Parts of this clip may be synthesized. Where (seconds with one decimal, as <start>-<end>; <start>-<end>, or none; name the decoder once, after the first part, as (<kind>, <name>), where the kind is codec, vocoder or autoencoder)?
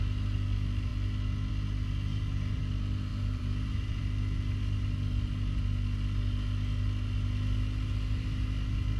2.1-2.7 (vocoder, BigVGAN v2); 3.1-4.0